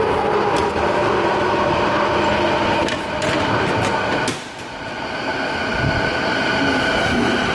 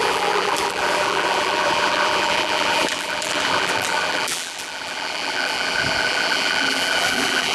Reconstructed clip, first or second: second